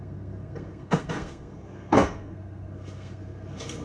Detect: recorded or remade remade